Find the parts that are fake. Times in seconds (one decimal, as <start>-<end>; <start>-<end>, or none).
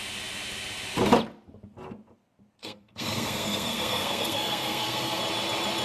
2.6-5.2